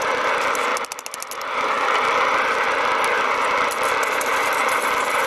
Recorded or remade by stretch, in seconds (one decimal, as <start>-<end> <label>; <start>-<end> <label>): 0.0-5.3 recorded